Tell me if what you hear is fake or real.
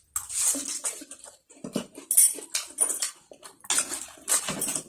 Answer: real